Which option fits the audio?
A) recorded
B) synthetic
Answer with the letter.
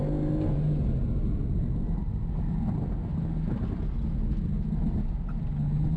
A